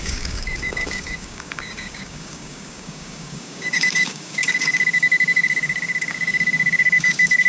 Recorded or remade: remade